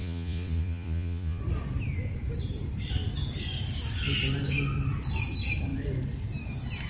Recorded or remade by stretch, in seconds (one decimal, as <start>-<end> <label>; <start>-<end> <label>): 0.0-1.4 remade; 1.4-6.9 recorded